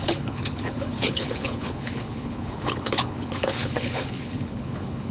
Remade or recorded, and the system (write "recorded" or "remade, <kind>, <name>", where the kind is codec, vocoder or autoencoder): remade, codec, HILCodec